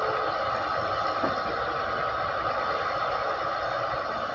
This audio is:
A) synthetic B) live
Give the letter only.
B